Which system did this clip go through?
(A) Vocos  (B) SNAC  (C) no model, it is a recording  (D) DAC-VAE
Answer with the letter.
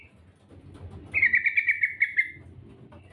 C